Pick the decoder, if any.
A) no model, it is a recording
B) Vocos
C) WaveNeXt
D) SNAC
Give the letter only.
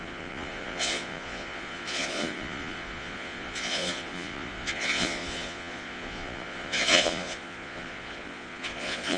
B